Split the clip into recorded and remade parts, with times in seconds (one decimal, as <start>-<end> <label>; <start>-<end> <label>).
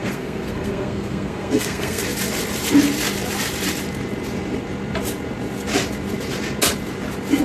0.0-2.0 remade; 2.0-7.4 recorded